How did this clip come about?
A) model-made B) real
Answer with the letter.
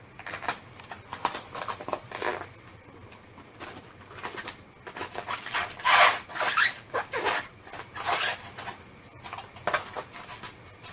B